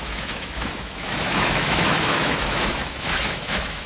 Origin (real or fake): fake